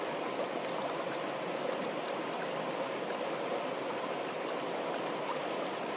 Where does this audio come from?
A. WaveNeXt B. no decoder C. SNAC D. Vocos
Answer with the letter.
B